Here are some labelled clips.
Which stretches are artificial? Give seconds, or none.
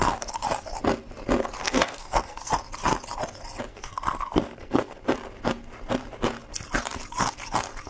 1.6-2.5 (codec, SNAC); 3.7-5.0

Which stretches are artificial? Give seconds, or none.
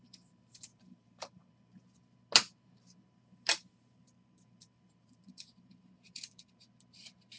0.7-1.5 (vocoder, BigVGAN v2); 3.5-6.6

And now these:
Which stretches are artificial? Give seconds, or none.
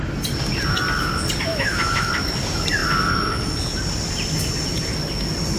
1.5-2.1 (autoencoder, DAC-VAE)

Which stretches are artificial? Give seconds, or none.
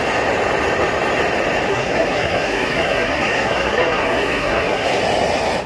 1.7-5.0 (codec, SNAC)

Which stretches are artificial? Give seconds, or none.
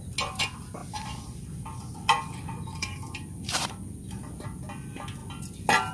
0.8-4.3 (vocoder, BigVGAN v2)